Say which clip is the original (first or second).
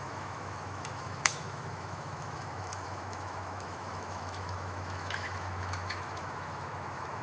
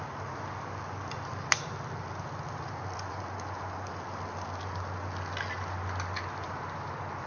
second